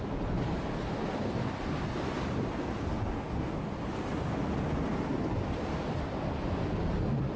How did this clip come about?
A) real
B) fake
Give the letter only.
A